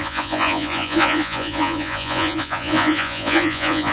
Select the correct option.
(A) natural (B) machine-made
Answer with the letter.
B